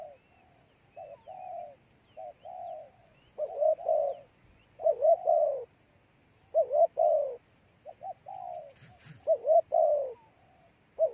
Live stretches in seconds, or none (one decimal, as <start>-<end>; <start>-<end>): 0.0-3.0; 5.1-11.1